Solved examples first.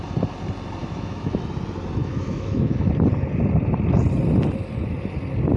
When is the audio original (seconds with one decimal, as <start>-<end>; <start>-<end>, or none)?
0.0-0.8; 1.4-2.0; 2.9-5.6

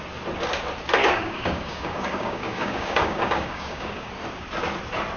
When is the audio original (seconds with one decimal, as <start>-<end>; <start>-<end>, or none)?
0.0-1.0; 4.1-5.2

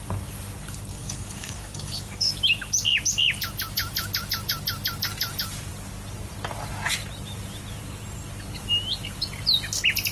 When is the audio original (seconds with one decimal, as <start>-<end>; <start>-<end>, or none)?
0.0-0.9; 2.3-10.1